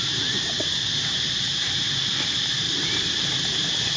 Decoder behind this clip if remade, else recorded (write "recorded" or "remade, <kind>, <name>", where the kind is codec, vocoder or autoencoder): recorded